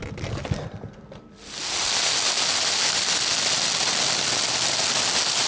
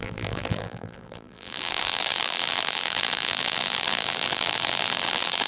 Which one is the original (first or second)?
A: first